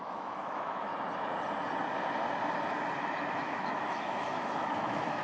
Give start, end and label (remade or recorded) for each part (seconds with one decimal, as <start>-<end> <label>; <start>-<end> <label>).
0.0-0.9 remade; 0.9-3.3 recorded; 3.3-5.2 remade

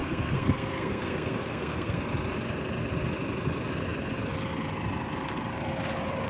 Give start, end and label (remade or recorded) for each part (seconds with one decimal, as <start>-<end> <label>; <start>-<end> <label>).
0.0-2.0 remade; 2.0-6.3 recorded

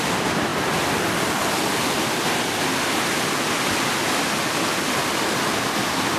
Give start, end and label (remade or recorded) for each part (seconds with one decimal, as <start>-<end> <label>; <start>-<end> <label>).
0.0-6.2 recorded

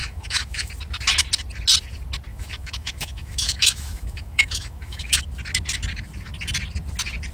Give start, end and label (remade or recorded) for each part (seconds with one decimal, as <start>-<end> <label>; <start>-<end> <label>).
0.0-0.7 remade; 0.7-2.3 recorded; 2.3-5.2 remade; 5.2-7.3 recorded